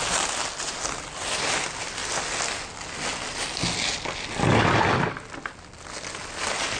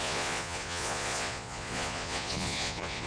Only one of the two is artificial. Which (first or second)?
second